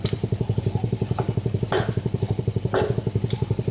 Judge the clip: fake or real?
real